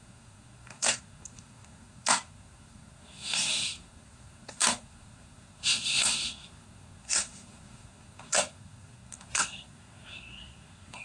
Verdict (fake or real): fake